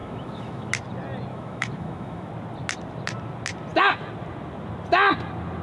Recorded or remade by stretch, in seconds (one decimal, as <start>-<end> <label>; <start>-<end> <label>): 0.0-0.7 remade; 0.7-1.3 recorded; 1.3-2.3 remade; 2.3-5.6 recorded